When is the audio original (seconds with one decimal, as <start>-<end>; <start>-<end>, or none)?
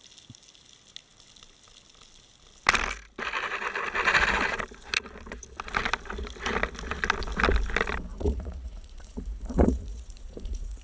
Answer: 0.0-8.1